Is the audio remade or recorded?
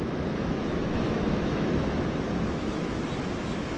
remade